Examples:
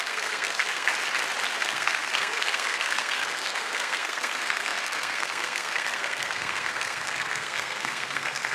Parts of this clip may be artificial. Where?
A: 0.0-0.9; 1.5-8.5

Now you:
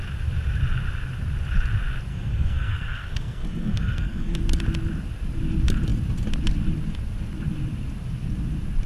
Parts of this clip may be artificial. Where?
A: 2.1-4.4

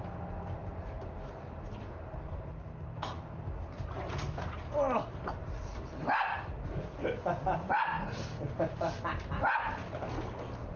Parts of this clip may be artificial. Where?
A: none

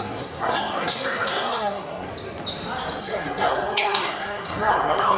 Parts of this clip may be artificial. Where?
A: 0.0-2.1; 3.0-5.2

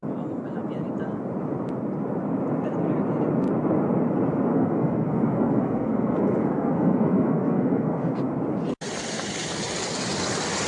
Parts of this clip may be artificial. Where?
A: 4.5-8.3

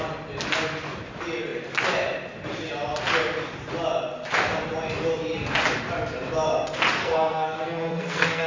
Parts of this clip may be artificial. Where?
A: 7.0-8.5